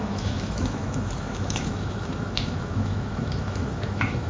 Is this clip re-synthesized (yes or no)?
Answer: yes